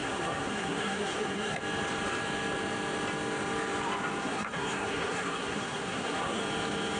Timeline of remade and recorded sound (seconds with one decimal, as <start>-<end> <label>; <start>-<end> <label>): 0.0-1.6 remade; 1.6-4.2 recorded; 4.2-6.4 remade; 6.4-7.0 recorded